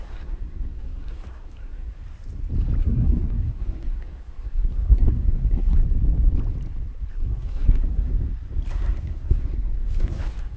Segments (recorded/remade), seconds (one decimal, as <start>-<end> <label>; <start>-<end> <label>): 0.0-2.0 remade; 2.0-2.8 recorded; 2.8-5.8 remade; 5.8-7.1 recorded; 7.1-8.1 remade; 8.1-8.7 recorded; 8.7-10.6 remade